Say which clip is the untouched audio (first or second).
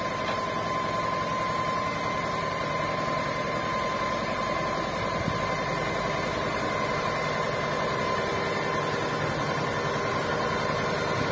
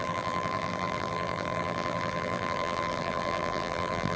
first